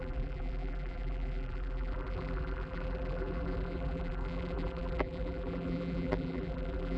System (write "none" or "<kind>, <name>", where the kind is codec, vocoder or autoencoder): vocoder, BigVGAN v2